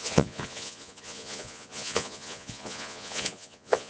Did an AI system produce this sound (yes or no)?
yes